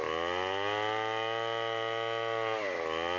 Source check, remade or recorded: recorded